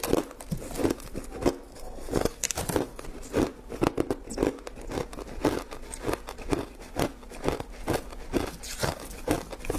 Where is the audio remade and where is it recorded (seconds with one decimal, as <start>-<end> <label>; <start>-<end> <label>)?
0.0-9.8 recorded